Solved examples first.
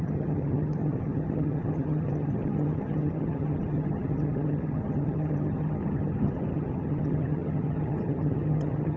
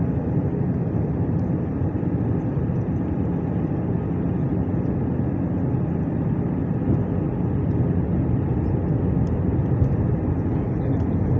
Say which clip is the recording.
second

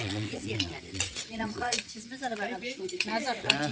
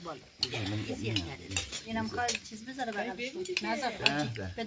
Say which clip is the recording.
second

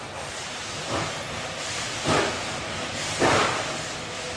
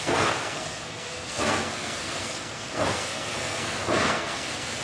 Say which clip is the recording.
first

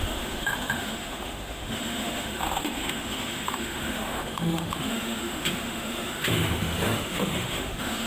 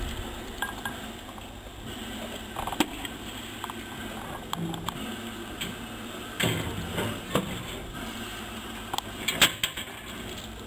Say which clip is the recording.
second